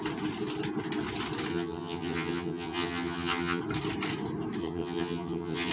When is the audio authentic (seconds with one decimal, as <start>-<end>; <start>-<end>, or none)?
0.0-1.5; 3.6-4.6